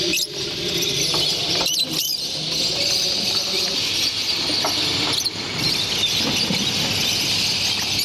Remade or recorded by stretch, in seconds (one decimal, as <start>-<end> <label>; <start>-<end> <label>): 0.0-8.0 recorded